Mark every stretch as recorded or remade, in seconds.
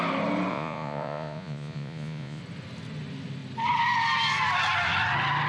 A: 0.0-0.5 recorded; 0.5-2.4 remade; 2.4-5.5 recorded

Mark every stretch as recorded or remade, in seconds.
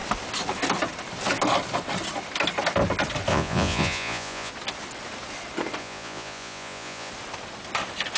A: 0.0-3.3 recorded; 3.3-4.5 remade; 4.5-5.8 recorded; 5.8-7.1 remade; 7.1-8.2 recorded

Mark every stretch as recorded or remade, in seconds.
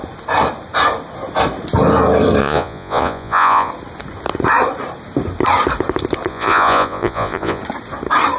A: 0.0-2.4 recorded; 2.4-3.7 remade; 3.7-6.3 recorded; 6.3-7.6 remade; 7.6-8.4 recorded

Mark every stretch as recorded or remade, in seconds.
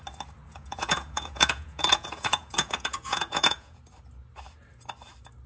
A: 0.0-0.5 recorded; 0.5-3.8 remade; 3.8-5.5 recorded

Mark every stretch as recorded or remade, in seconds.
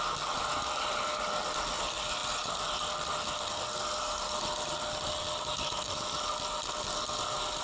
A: 0.0-7.6 recorded